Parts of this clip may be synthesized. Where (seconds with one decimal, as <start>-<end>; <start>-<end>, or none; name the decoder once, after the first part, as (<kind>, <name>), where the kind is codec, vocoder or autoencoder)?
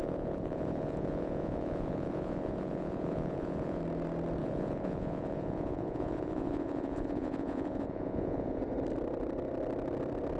0.0-3.8 (vocoder, Vocos); 4.4-8.6